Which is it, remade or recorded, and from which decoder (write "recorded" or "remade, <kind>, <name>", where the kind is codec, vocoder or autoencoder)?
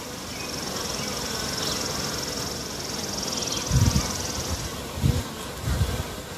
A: recorded